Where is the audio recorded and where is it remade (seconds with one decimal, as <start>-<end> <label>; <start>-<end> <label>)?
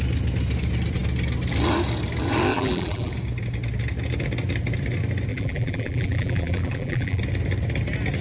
0.0-2.5 recorded; 2.5-3.1 remade; 3.1-5.3 recorded; 5.3-7.2 remade; 7.2-8.2 recorded